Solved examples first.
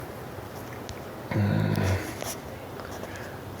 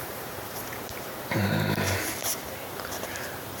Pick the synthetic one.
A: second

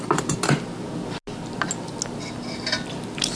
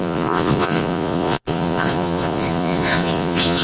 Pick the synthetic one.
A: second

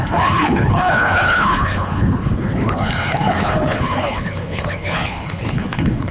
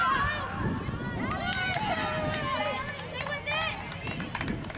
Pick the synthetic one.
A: first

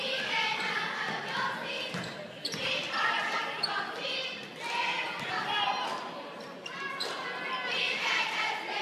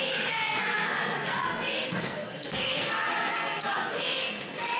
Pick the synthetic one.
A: second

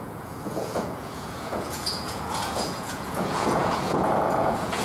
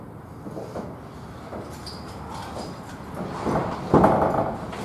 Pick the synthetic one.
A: first